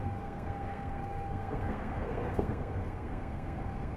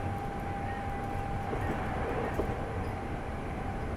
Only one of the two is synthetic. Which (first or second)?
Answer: first